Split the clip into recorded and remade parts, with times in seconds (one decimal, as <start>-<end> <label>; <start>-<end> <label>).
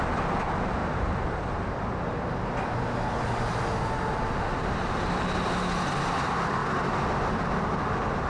0.0-8.3 recorded